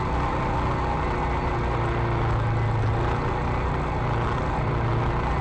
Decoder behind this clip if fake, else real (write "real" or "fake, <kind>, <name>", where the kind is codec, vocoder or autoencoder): real